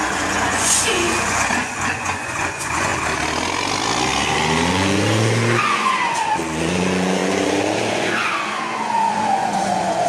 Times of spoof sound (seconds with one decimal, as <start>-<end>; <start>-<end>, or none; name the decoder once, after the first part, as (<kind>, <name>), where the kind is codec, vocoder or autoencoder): 0.0-2.9 (vocoder, Vocos); 4.7-10.1